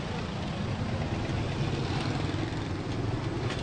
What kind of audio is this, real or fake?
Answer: real